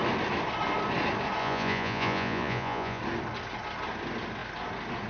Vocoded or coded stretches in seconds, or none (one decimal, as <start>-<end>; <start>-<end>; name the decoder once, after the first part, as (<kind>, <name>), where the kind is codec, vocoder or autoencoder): 1.4-3.0 (vocoder, Vocos)